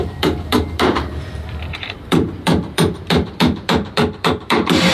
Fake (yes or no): yes